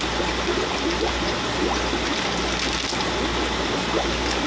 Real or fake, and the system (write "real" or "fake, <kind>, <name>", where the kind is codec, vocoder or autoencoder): real